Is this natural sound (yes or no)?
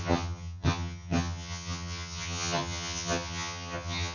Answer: no